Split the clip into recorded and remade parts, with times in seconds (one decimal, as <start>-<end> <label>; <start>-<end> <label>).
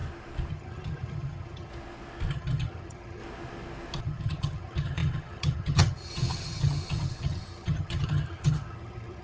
0.0-0.5 recorded; 0.5-1.7 remade; 1.7-2.3 recorded; 2.3-3.2 remade; 3.2-4.0 recorded; 4.0-9.2 remade